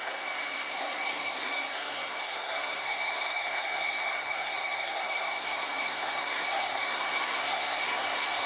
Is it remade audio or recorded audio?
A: remade